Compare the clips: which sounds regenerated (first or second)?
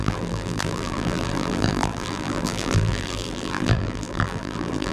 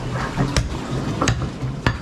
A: first